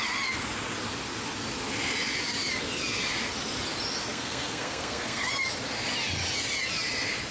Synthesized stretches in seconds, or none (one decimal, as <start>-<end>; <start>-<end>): 4.1-5.3